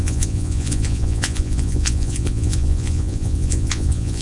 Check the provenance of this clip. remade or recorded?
remade